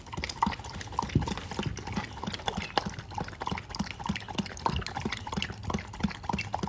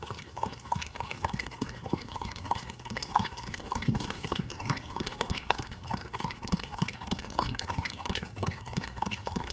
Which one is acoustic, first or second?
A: first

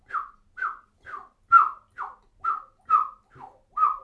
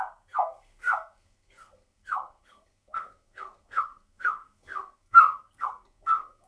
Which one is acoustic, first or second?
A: first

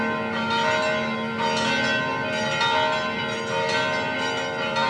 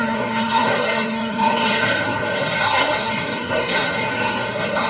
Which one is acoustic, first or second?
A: first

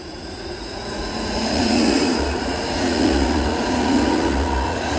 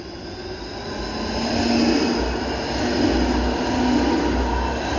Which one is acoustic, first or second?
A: second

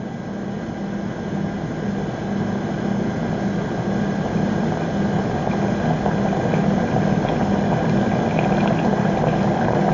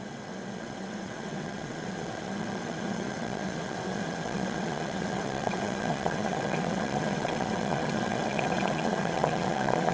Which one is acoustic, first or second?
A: first